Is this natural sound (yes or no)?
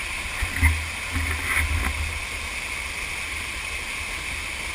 yes